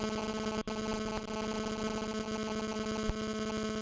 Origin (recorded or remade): recorded